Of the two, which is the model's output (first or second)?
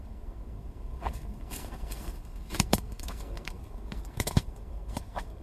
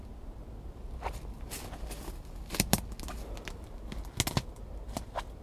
first